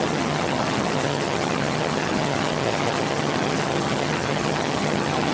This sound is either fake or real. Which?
fake